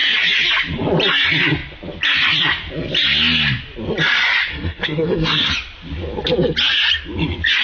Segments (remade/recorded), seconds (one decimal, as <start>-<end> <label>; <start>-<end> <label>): 0.0-4.5 recorded; 4.5-5.5 remade; 5.5-7.6 recorded